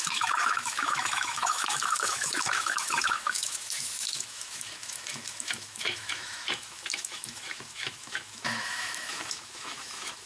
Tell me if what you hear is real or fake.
fake